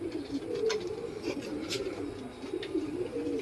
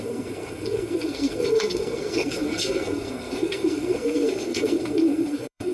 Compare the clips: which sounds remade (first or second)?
second